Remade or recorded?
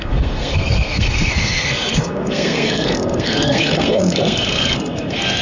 remade